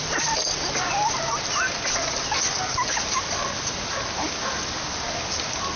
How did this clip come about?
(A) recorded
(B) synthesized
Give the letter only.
A